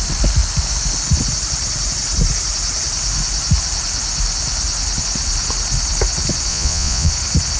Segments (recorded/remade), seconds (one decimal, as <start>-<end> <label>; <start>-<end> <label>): 0.0-6.5 recorded; 6.5-7.1 remade; 7.1-7.6 recorded